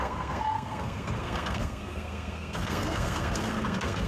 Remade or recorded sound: remade